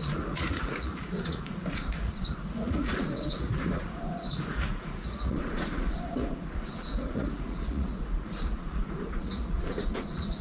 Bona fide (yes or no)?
no